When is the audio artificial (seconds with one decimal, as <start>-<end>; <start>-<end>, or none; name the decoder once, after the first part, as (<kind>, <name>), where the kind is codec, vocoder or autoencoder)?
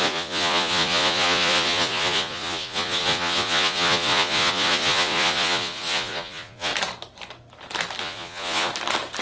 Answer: 0.0-6.7 (vocoder, Vocos); 8.0-8.7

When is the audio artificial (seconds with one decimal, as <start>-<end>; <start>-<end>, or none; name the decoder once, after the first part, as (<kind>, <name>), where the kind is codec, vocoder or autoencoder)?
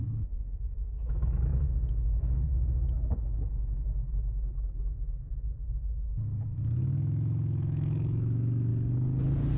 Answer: 0.0-8.7 (autoencoder, DAC-VAE)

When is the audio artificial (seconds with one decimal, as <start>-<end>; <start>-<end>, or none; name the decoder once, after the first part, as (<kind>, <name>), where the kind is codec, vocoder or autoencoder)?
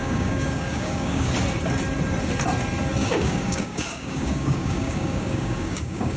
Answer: 0.0-1.3 (codec, DAC); 3.0-6.2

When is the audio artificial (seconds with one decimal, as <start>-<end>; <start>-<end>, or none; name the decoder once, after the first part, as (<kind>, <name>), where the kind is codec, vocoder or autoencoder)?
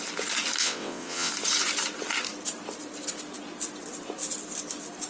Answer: 0.6-1.3 (vocoder, WaveNeXt)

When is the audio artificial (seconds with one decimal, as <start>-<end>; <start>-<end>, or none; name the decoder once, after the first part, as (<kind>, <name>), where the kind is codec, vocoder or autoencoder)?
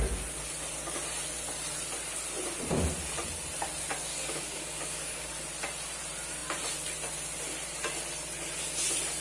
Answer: 4.1-5.3 (codec, DAC)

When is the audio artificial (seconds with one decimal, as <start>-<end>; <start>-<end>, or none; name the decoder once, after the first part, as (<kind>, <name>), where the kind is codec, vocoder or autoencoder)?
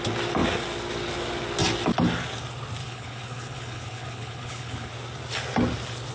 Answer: 2.8-4.9 (codec, HILCodec)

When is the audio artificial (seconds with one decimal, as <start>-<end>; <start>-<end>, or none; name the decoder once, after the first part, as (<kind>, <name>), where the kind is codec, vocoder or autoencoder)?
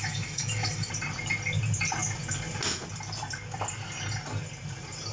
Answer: 0.0-0.9 (autoencoder, DAC-VAE)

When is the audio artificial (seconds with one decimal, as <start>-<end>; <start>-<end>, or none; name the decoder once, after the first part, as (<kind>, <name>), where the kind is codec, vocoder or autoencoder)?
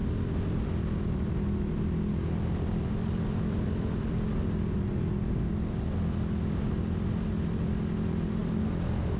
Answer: none